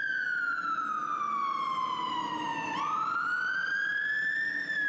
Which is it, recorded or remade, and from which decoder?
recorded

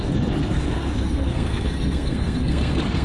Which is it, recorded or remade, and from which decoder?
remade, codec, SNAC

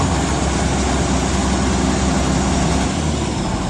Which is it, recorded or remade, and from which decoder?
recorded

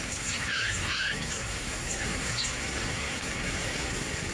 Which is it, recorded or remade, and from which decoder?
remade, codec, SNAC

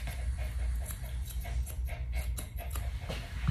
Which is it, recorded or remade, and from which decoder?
recorded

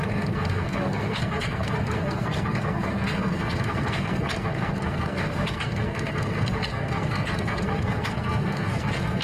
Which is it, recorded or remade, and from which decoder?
remade, codec, SNAC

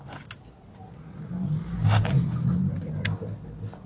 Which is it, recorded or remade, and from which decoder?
recorded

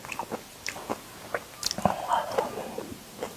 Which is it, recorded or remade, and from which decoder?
recorded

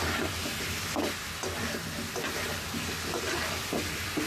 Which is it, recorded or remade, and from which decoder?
recorded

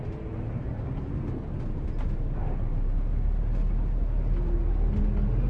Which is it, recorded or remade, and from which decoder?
recorded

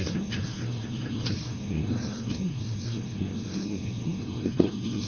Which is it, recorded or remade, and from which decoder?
remade, codec, SNAC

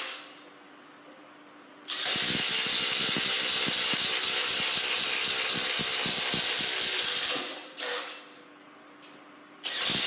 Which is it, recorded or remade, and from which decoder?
recorded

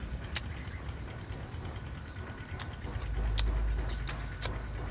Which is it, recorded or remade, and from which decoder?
recorded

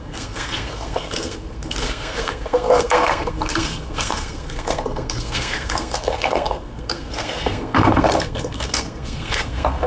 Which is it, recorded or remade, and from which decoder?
remade, codec, SNAC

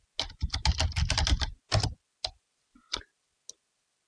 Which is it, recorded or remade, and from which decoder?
recorded